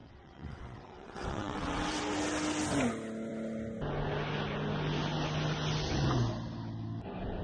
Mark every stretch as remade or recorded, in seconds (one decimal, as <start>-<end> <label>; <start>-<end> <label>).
0.0-2.0 remade; 2.0-7.4 recorded